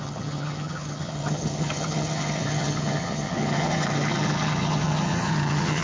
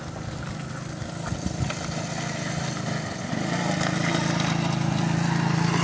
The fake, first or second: first